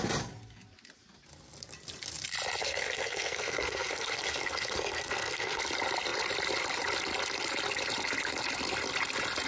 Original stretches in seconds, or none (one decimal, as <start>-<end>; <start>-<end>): 0.0-2.6; 5.6-9.5